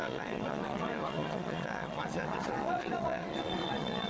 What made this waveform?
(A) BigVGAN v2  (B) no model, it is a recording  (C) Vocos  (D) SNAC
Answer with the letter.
C